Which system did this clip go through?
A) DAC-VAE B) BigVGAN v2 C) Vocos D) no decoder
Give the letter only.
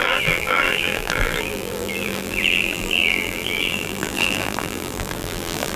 B